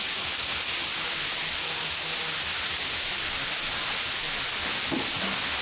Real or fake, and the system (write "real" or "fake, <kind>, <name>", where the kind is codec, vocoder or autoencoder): real